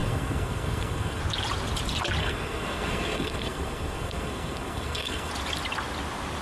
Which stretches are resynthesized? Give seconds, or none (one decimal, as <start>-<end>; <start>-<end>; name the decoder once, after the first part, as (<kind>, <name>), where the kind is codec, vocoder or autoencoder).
0.0-1.2 (codec, SNAC); 2.2-5.3